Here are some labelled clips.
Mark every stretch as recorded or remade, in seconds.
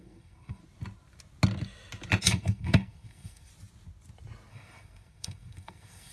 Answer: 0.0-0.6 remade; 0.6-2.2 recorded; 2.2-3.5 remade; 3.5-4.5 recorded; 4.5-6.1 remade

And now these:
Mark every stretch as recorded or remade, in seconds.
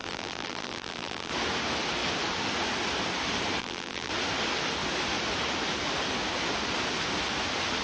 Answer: 0.0-1.3 remade; 1.3-3.6 recorded; 3.6-4.1 remade; 4.1-7.8 recorded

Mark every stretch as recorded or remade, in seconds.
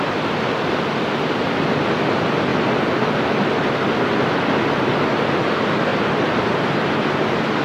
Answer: 0.0-7.6 recorded